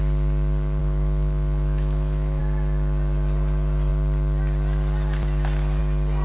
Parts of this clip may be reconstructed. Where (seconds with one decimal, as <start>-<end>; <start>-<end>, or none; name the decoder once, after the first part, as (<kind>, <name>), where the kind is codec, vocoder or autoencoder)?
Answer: 0.8-2.4 (autoencoder, DAC-VAE)